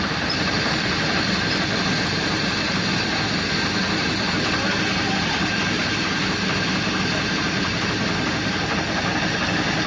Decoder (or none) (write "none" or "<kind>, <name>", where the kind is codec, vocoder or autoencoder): none